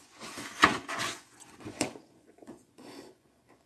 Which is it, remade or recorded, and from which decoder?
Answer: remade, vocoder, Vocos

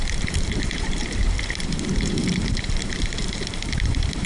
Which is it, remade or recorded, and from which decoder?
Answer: remade, vocoder, BigVGAN v2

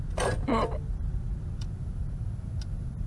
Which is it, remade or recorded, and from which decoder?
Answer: recorded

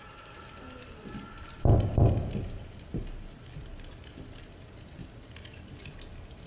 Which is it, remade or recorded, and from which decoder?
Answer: recorded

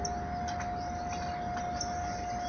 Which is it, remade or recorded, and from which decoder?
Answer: recorded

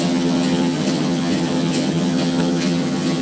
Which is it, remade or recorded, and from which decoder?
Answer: remade, vocoder, HiFi-GAN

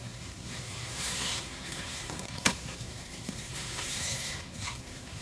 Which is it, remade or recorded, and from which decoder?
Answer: remade, codec, SNAC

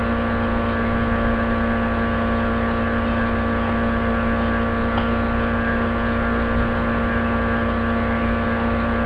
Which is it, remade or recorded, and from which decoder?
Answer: recorded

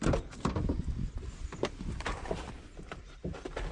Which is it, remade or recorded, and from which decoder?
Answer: remade, vocoder, BigVGAN v2